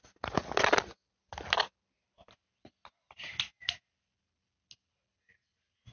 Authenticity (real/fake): real